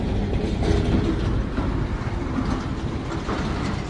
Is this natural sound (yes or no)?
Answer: yes